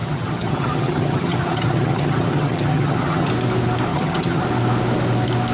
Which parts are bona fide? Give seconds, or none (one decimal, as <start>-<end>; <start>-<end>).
3.3-3.9; 4.4-5.5